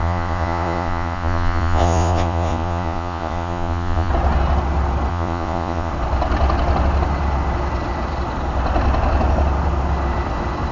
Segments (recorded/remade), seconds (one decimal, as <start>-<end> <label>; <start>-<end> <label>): 0.0-4.1 remade; 4.1-5.1 recorded; 5.1-5.9 remade; 5.9-10.7 recorded